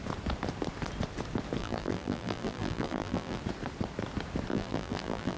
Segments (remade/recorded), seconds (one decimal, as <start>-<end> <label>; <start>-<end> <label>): 0.0-1.6 recorded; 1.6-3.4 remade; 3.4-4.5 recorded; 4.5-5.4 remade